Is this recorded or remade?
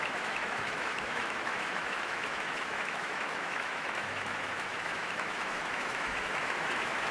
remade